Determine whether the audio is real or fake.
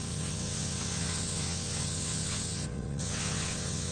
fake